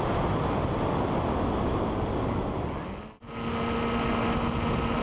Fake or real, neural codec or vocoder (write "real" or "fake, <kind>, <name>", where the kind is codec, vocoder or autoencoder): real